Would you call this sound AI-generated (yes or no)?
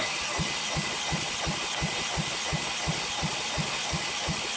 no